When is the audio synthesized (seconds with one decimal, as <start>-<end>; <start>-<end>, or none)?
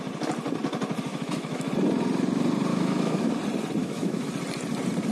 1.1-1.7; 2.7-3.3; 3.8-4.3